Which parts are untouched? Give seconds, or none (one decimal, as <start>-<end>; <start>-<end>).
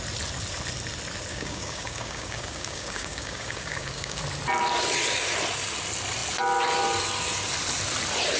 0.0-1.3; 4.2-8.4